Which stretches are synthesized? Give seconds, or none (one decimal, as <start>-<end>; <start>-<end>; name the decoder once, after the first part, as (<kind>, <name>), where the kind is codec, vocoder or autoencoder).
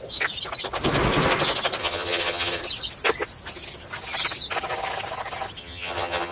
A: 1.8-2.6 (vocoder, HiFi-GAN); 5.6-6.3